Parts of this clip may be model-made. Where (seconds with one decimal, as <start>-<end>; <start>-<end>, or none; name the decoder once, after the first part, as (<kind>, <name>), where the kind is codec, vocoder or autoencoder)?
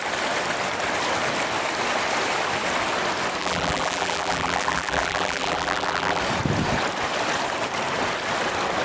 3.4-6.2 (vocoder, BigVGAN v2)